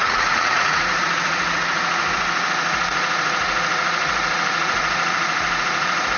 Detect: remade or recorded remade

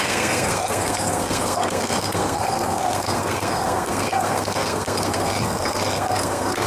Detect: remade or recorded remade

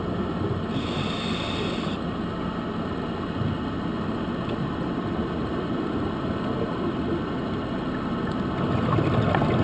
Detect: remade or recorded recorded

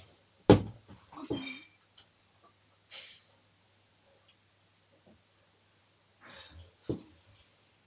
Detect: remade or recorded recorded